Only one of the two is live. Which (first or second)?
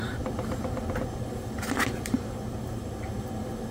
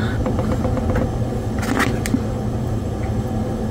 second